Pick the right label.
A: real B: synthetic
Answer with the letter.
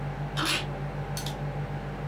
A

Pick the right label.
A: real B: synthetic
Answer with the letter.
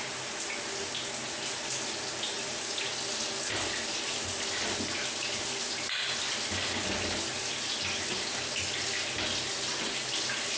A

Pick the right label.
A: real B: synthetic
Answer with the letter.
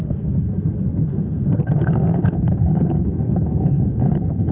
B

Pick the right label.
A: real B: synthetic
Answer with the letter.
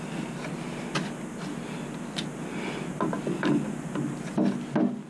A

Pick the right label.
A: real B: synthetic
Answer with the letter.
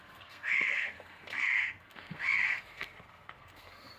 B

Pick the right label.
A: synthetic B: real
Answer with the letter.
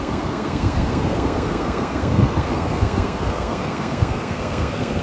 A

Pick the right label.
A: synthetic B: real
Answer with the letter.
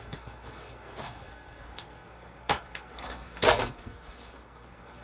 A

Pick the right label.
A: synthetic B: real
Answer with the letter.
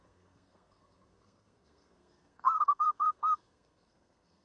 A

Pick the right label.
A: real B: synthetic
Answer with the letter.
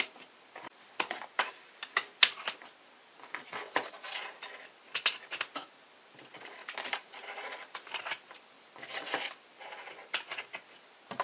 A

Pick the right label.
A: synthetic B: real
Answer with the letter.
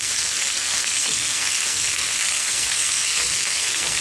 A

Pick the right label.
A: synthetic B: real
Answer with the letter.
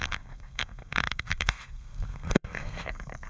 A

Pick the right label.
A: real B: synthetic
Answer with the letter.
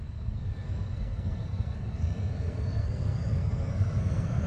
B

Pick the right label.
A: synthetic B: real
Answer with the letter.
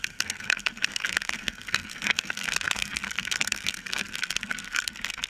A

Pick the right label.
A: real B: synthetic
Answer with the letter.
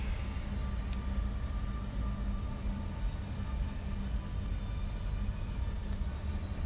A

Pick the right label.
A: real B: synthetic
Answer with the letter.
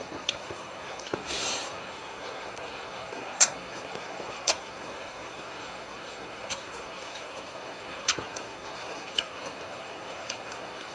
B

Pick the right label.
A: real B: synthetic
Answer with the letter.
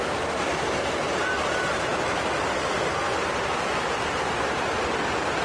A